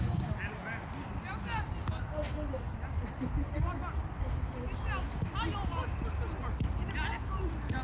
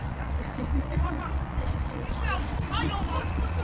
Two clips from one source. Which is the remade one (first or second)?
second